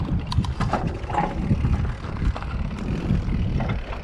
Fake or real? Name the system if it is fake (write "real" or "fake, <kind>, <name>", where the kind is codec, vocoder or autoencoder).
fake, vocoder, BigVGAN v2